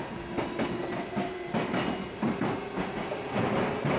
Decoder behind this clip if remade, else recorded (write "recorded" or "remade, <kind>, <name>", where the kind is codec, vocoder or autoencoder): recorded